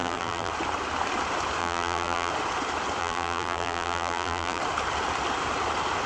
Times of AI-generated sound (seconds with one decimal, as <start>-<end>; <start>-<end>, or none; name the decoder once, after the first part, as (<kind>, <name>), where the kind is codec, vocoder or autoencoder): 0.0-0.5 (vocoder, BigVGAN v2); 1.6-2.3; 3.0-4.6